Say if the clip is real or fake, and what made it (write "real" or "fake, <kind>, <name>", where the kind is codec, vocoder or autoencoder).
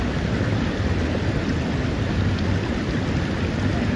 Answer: real